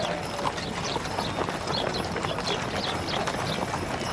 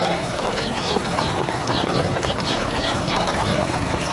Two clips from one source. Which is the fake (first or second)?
second